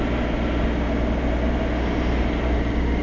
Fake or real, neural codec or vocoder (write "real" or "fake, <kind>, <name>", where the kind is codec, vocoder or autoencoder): real